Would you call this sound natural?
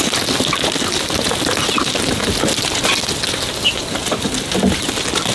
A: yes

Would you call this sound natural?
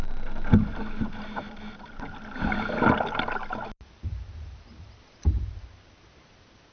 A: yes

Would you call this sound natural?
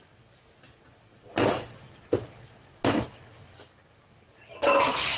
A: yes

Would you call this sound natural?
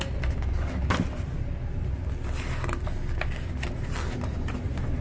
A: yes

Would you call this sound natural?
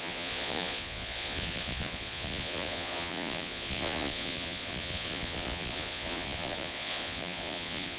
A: no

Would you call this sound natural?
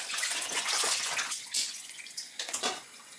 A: no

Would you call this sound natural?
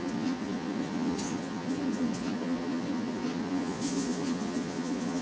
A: no